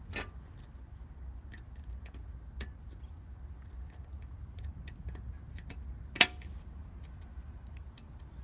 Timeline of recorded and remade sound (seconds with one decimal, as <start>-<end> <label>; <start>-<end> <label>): 0.0-8.4 recorded